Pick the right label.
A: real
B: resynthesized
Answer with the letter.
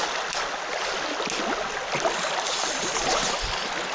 A